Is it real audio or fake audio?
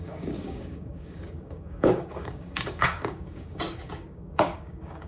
fake